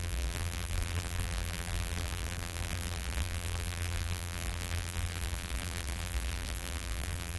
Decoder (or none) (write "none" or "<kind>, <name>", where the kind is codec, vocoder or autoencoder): vocoder, BigVGAN v2